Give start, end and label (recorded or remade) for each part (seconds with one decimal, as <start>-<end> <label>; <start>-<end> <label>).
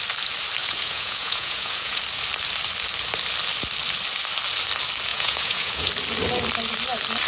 0.0-0.6 recorded; 0.6-2.0 remade; 2.0-5.1 recorded; 5.1-5.9 remade; 5.9-7.3 recorded